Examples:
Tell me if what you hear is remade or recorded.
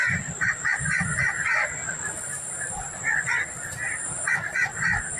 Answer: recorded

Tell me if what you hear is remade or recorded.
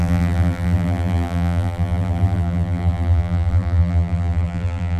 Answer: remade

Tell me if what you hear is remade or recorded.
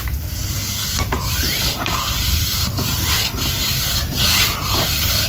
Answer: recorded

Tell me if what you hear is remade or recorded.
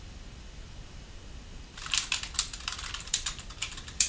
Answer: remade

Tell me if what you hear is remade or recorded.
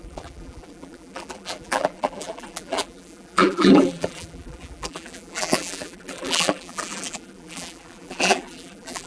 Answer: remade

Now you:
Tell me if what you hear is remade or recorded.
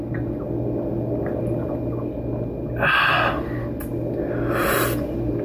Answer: recorded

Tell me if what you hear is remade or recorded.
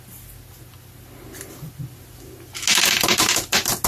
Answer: recorded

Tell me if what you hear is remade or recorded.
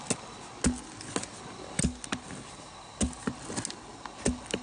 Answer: recorded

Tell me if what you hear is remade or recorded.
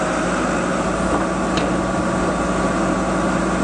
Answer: recorded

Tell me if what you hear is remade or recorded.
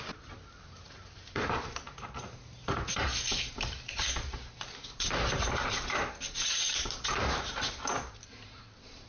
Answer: remade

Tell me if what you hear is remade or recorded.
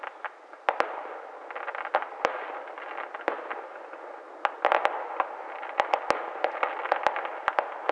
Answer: recorded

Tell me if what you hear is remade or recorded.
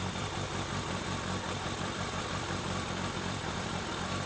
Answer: remade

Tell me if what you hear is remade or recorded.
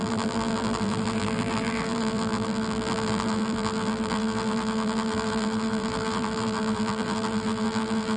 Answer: remade